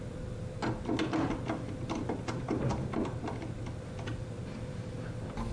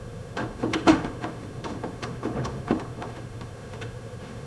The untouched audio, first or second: first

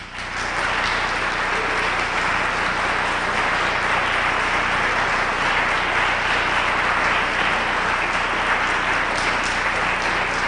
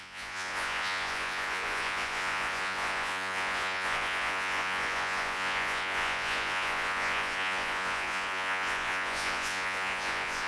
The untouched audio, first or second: first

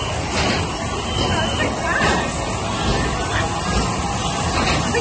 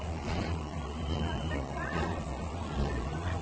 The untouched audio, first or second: first